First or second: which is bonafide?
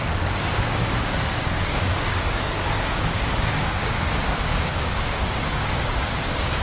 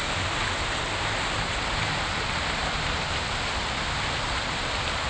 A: second